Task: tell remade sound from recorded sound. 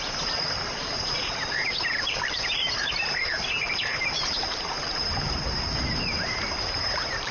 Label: remade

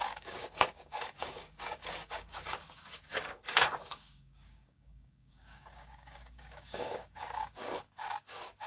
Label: remade